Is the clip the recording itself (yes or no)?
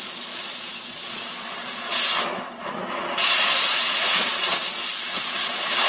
no